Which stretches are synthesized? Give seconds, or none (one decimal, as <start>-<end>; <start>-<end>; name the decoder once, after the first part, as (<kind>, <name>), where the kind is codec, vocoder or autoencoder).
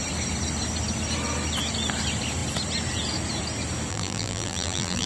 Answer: 3.9-5.1 (vocoder, BigVGAN v2)